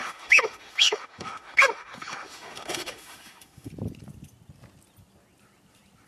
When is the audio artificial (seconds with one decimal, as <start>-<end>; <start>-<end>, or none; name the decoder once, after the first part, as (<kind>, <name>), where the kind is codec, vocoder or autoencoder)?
0.0-3.7 (autoencoder, DAC-VAE)